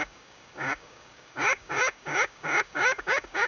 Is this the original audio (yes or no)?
no